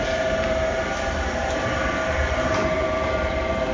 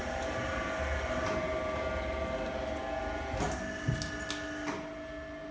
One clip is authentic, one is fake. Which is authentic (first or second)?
second